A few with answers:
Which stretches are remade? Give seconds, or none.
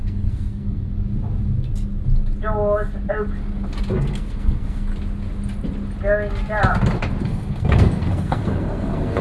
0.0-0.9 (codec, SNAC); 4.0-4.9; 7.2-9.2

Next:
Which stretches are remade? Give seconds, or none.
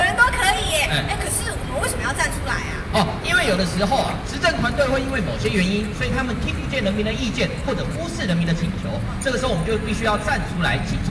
none